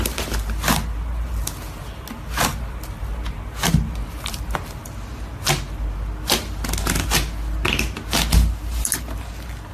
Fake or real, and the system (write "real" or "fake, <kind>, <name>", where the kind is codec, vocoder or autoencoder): real